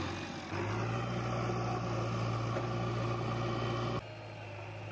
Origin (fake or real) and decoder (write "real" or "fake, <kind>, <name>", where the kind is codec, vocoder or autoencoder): real